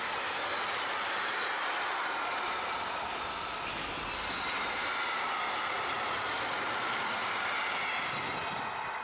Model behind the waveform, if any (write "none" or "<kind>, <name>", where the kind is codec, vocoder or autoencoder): none